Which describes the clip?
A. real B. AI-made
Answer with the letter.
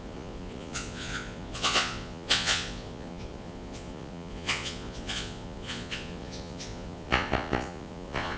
B